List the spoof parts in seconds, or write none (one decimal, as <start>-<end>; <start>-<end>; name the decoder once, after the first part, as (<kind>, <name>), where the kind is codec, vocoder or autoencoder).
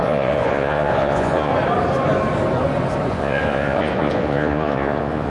0.0-1.5 (vocoder, Vocos); 3.1-5.3